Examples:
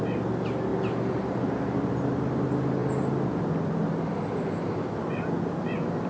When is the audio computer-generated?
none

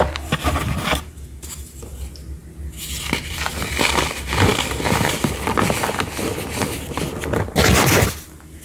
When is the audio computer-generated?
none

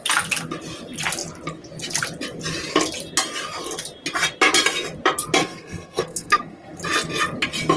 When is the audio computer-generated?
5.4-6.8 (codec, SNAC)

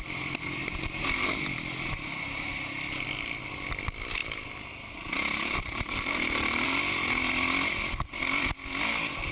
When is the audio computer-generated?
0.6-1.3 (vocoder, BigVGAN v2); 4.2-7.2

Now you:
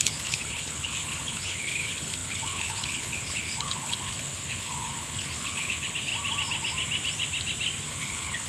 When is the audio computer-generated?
0.0-6.1 (codec, HILCodec); 7.9-8.5

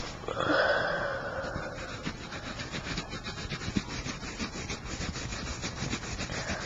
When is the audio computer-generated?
1.1-3.0 (vocoder, BigVGAN v2)